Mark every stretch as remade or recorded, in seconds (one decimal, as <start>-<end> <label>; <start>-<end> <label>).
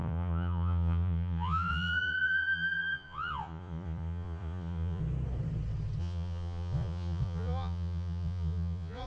0.0-5.0 remade; 5.0-6.0 recorded; 6.0-9.1 remade